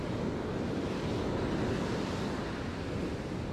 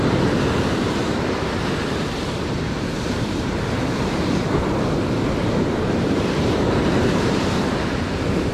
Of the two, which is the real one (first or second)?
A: first